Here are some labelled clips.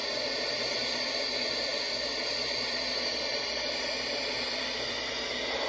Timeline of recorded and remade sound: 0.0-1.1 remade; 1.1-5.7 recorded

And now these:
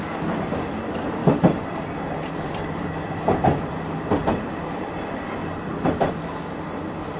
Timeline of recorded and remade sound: 0.0-1.2 recorded; 1.2-4.9 remade; 4.9-5.4 recorded; 5.4-6.1 remade; 6.1-7.2 recorded

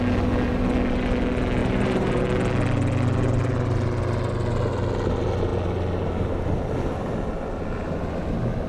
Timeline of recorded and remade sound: 0.0-1.6 recorded; 1.6-2.2 remade; 2.2-8.7 recorded

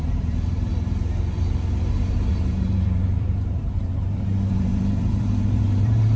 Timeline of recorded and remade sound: 0.0-0.7 remade; 0.7-2.3 recorded; 2.3-6.2 remade

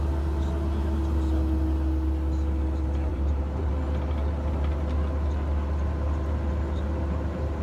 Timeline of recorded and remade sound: 0.0-3.1 recorded; 3.1-3.7 remade; 3.7-7.6 recorded

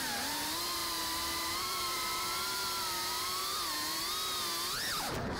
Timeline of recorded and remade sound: 0.0-0.8 recorded; 0.8-4.0 remade; 4.0-5.4 recorded